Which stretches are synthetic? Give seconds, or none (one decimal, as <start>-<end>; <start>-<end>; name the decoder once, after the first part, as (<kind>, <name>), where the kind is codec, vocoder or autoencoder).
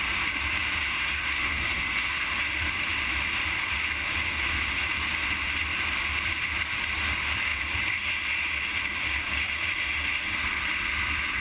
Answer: 0.8-2.3 (codec, SNAC)